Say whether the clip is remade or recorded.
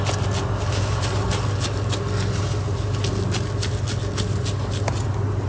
recorded